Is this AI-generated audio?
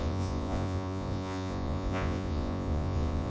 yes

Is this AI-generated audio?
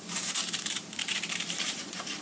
yes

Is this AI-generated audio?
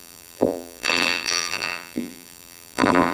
yes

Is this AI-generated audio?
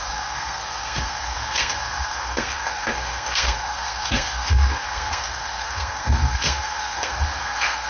yes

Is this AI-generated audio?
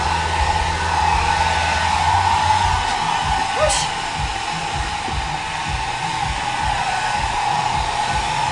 no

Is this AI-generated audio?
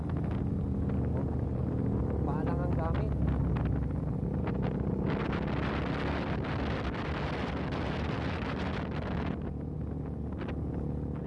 no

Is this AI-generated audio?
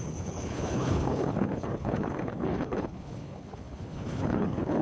yes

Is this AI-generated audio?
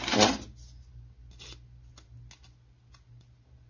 no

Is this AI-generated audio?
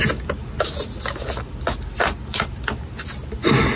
no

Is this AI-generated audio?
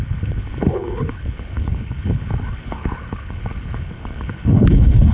yes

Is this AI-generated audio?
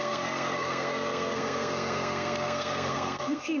yes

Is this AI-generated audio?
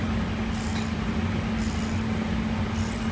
no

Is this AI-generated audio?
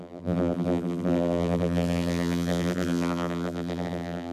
yes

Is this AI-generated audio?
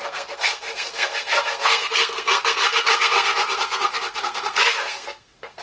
yes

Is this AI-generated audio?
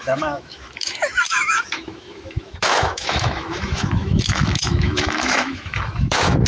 yes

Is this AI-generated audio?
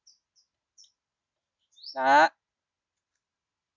no